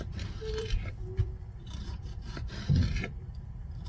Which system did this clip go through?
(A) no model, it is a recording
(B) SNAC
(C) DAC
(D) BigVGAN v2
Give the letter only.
D